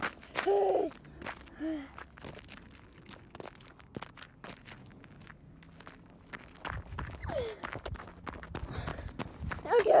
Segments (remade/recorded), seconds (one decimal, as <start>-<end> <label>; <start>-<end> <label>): 0.0-10.0 recorded